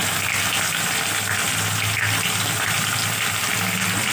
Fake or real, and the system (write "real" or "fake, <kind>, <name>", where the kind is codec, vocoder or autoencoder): real